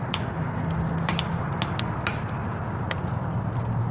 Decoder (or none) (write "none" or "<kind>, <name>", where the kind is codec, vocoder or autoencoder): none